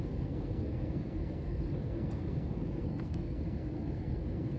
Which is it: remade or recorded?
remade